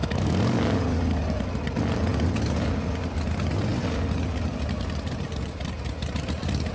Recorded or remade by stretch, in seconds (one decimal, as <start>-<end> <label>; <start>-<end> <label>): 0.0-0.8 remade; 0.8-6.7 recorded